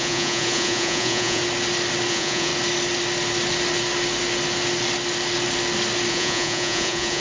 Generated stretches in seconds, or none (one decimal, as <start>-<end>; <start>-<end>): 0.0-1.4; 2.1-2.5; 6.1-7.2